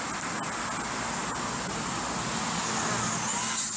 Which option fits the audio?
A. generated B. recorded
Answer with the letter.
B